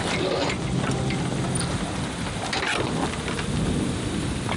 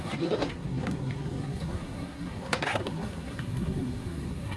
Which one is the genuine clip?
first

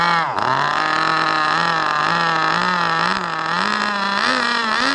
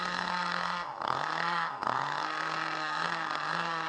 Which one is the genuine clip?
first